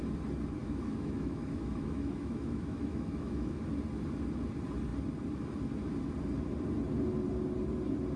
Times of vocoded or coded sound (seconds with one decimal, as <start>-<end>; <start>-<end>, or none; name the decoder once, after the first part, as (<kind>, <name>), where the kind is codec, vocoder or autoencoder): 0.6-3.7 (autoencoder, DAC-VAE)